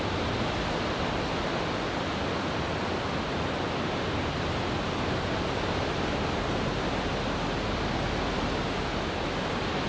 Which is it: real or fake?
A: real